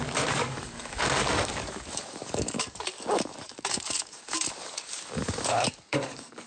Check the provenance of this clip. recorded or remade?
remade